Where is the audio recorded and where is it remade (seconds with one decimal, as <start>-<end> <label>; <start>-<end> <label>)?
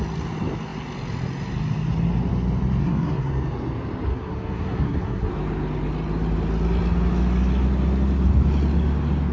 0.0-2.8 recorded; 2.8-3.3 remade; 3.3-4.1 recorded; 4.1-5.3 remade; 5.3-9.3 recorded